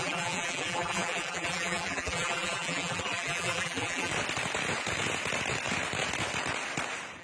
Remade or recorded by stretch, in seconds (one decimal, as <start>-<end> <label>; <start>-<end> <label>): 0.0-4.1 remade; 4.1-7.2 recorded